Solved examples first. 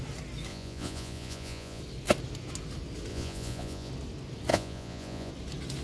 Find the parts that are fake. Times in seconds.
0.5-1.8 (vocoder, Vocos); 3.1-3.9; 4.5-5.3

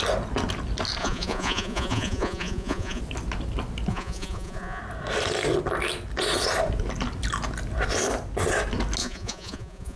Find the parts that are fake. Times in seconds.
1.0-3.0 (vocoder, Vocos); 3.9-4.8; 9.0-10.0

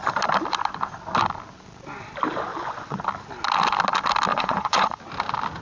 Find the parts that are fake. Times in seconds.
2.5-3.0 (vocoder, Vocos); 4.3-5.0

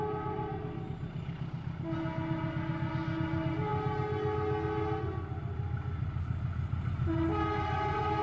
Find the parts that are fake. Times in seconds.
none

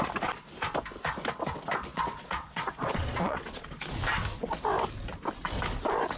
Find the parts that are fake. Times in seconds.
1.9-3.8 (vocoder, Vocos)

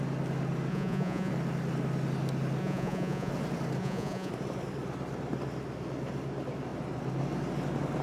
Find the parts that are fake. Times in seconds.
0.7-1.3 (vocoder, Vocos); 2.6-3.3; 3.8-4.3